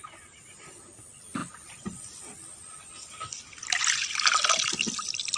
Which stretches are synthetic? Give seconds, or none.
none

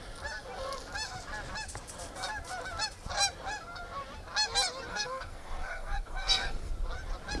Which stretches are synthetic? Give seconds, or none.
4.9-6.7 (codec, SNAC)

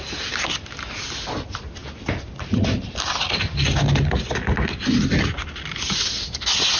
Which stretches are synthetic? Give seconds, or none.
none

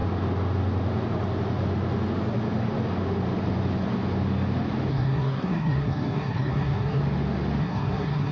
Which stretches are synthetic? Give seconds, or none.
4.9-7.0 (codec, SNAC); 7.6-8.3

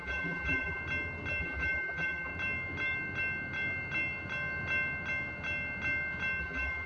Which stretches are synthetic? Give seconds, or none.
0.0-0.8 (vocoder, BigVGAN v2); 1.4-2.3; 6.4-6.9

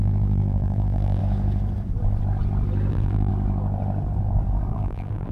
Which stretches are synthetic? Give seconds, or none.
0.0-1.2 (vocoder, BigVGAN v2); 2.9-3.3; 4.7-5.3

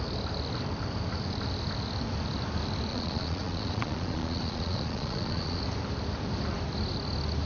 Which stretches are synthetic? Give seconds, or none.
2.9-5.6 (vocoder, Vocos)